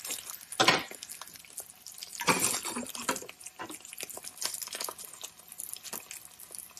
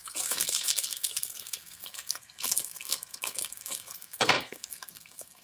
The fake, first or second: second